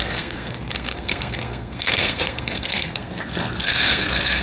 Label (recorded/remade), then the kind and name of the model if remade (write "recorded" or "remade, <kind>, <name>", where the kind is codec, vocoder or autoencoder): remade, codec, SNAC